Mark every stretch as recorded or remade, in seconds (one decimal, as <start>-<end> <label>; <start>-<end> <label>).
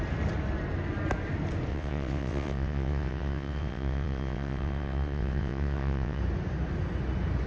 0.0-1.7 recorded; 1.7-6.2 remade; 6.2-7.5 recorded